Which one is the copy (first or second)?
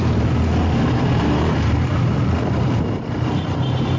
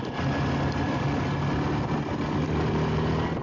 first